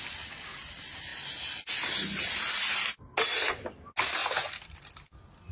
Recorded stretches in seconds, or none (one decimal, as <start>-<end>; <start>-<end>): 0.0-5.5